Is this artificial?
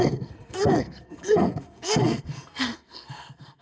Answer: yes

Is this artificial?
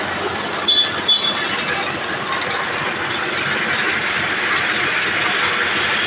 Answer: no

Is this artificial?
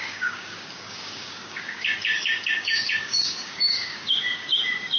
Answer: yes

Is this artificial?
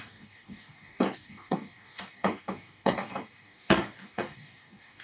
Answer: yes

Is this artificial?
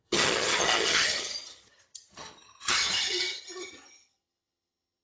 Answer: yes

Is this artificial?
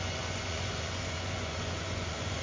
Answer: yes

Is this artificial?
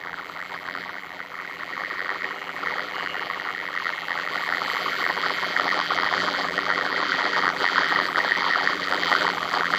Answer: yes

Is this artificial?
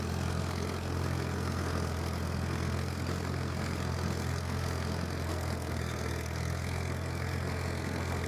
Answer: yes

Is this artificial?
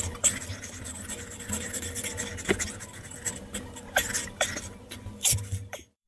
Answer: yes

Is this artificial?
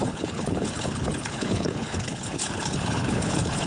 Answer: yes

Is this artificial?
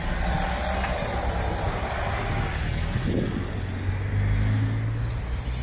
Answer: no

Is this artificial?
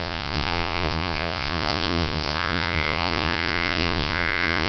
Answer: yes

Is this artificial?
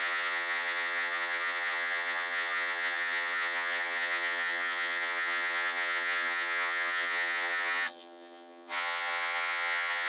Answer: yes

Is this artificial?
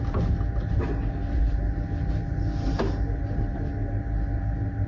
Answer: no